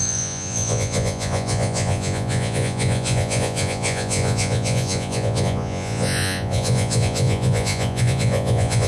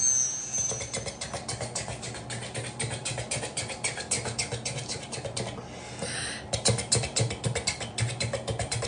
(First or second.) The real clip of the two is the second